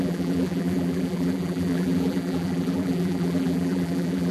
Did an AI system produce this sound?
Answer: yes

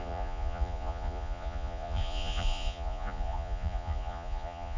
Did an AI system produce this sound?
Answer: yes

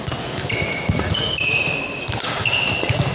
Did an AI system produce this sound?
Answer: no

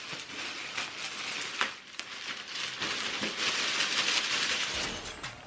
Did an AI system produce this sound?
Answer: no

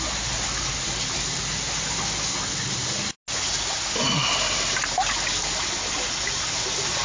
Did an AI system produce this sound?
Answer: no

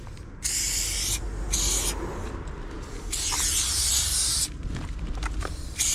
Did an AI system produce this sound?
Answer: no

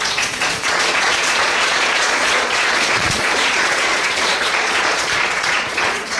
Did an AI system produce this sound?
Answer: yes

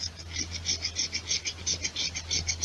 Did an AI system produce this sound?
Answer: no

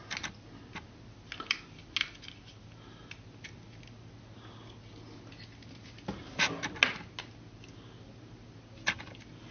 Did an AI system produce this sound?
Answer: no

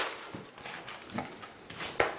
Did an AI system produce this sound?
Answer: no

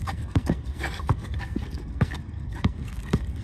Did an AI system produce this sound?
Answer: yes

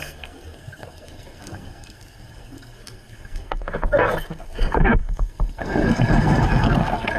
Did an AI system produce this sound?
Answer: yes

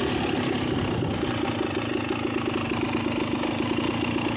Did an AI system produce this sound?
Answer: no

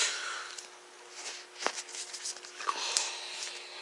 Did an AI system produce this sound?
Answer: no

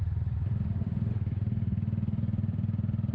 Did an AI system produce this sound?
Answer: yes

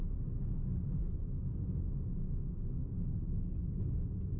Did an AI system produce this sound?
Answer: no